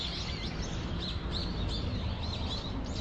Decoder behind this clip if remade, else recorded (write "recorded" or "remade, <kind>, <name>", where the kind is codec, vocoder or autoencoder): recorded